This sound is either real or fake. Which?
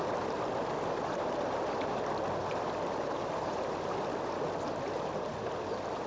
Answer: real